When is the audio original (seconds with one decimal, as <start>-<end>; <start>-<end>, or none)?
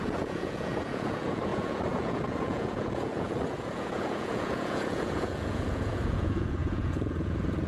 none